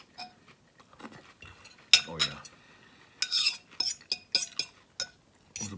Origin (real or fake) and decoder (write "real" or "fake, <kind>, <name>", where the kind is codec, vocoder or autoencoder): real